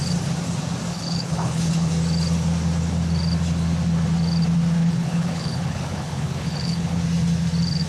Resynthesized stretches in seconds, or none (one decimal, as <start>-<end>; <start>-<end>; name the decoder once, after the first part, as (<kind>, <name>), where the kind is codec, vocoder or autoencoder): 0.9-1.9 (codec, HILCodec); 4.8-7.0